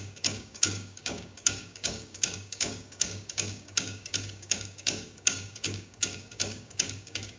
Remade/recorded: remade